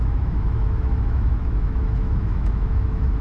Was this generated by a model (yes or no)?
yes